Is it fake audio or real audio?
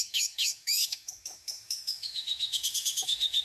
fake